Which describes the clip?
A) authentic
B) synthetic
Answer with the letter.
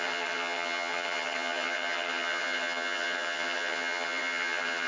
B